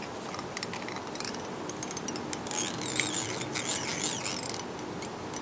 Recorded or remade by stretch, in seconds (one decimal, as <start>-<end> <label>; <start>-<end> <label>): 0.0-5.4 recorded